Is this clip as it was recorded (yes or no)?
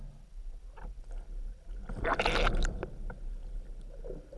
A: yes